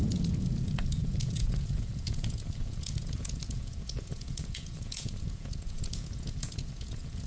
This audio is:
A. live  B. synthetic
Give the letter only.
B